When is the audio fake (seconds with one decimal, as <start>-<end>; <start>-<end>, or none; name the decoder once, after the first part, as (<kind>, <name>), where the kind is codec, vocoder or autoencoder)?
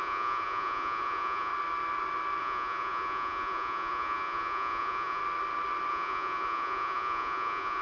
0.0-1.5 (vocoder, Vocos); 2.4-5.2; 5.9-7.8